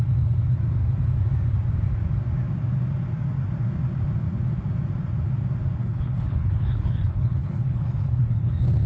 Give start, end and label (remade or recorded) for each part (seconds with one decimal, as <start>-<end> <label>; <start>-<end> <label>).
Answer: 0.0-5.8 recorded; 5.8-8.5 remade; 8.5-8.9 recorded